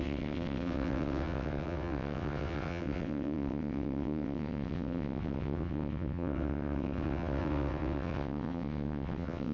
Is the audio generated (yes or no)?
yes